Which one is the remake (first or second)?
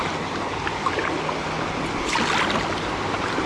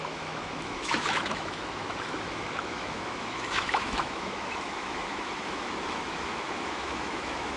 second